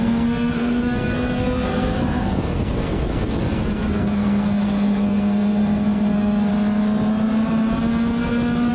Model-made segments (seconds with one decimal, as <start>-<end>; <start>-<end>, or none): 0.0-6.5